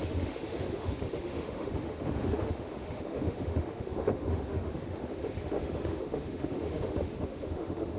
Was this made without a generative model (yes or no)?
no